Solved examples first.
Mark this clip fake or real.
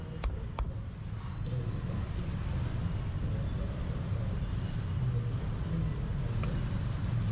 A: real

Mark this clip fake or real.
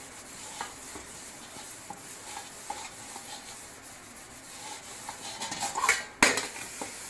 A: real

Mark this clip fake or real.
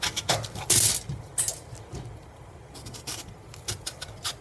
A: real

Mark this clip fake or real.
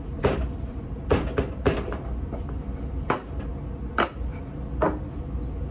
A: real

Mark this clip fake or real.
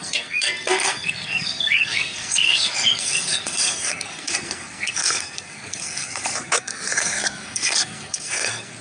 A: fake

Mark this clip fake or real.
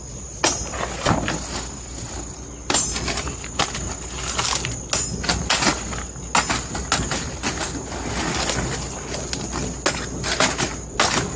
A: real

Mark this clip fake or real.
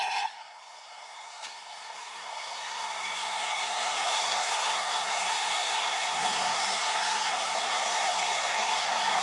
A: fake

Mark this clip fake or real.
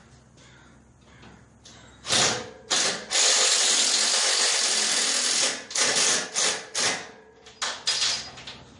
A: real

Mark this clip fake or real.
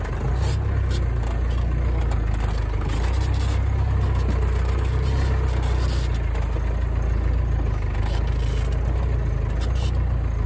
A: real